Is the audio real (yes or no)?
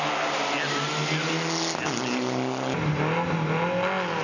yes